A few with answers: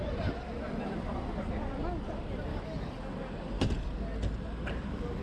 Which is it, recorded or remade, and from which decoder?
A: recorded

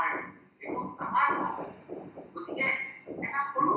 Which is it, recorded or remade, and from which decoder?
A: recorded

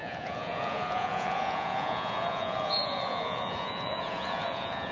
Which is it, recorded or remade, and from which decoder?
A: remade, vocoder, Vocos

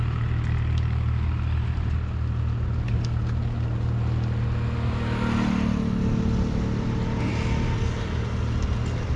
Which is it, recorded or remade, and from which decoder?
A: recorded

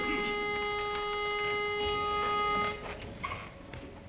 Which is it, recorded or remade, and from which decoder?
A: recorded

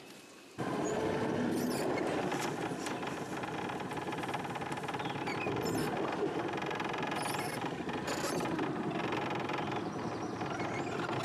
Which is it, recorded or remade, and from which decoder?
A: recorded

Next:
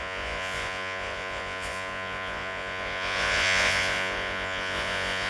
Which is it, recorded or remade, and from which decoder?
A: remade, vocoder, Vocos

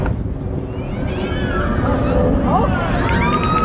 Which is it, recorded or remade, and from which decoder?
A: recorded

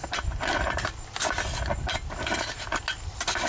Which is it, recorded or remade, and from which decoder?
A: recorded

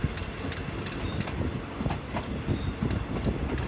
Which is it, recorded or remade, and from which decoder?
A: recorded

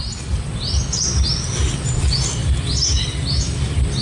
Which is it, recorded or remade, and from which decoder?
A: recorded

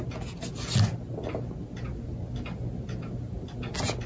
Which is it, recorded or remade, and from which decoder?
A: recorded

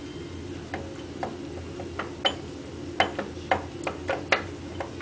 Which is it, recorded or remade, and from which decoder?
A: recorded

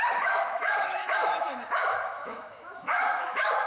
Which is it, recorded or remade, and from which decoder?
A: remade, autoencoder, DAC-VAE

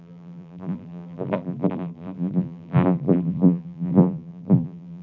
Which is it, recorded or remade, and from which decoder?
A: remade, vocoder, BigVGAN v2